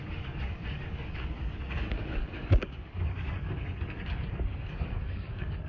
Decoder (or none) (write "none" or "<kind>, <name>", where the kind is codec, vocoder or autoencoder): codec, DAC